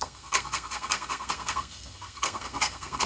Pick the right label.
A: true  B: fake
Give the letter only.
B